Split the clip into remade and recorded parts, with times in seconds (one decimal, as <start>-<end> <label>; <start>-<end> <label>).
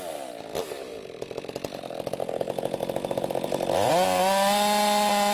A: 0.0-2.8 recorded; 2.8-3.9 remade; 3.9-5.3 recorded